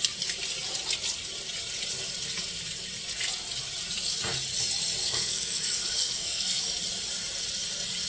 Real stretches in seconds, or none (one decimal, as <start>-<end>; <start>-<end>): 0.0-5.0; 6.6-8.1